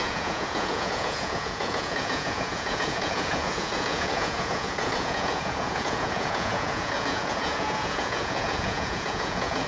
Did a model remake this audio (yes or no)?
yes